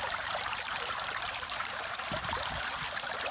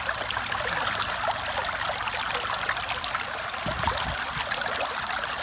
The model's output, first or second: first